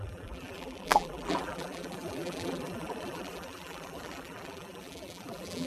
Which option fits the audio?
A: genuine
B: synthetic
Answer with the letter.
B